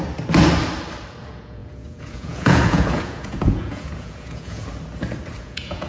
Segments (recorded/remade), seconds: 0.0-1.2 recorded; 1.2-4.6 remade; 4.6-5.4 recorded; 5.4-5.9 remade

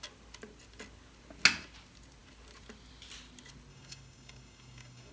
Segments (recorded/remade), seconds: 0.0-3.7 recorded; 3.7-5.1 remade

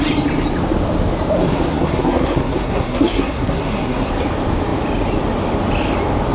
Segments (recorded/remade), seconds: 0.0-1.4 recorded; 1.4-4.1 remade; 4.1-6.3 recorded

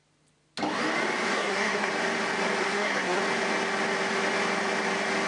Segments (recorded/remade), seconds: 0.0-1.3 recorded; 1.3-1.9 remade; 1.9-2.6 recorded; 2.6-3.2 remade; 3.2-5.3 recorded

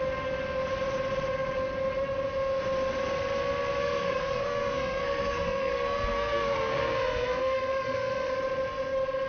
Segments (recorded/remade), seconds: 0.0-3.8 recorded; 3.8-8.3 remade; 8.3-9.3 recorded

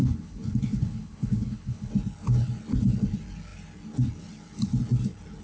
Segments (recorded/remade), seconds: 0.0-1.9 remade; 1.9-5.4 recorded

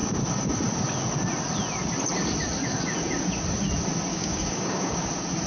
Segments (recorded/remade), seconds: 0.0-4.1 recorded; 4.1-5.1 remade; 5.1-5.5 recorded